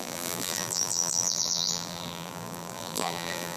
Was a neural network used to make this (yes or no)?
yes